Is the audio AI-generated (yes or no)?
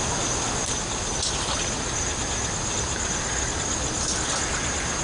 no